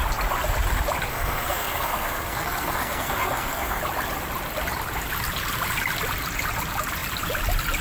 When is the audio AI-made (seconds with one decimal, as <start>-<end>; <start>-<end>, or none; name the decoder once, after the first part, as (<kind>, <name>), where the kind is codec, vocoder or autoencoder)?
1.1-3.8 (codec, SNAC)